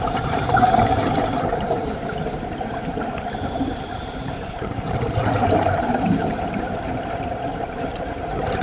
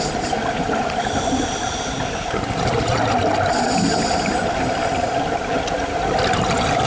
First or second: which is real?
second